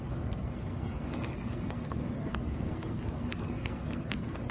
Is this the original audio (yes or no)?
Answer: no